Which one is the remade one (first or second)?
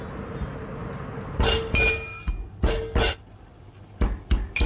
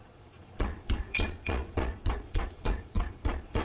second